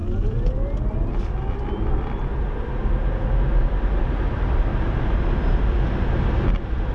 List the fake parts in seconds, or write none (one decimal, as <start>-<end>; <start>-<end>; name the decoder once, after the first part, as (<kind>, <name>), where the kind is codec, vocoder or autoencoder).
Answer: none